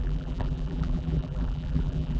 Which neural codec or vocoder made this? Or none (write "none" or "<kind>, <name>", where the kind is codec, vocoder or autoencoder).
vocoder, BigVGAN v2